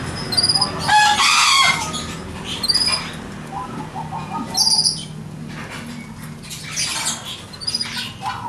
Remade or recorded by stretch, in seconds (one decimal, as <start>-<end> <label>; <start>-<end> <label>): 0.0-8.5 recorded